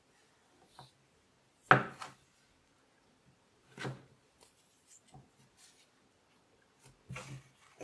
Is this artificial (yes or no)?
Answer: no